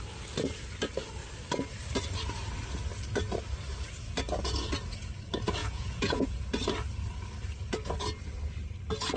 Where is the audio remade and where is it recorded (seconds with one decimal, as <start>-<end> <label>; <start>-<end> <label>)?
0.0-5.6 recorded; 5.6-6.5 remade; 6.5-9.2 recorded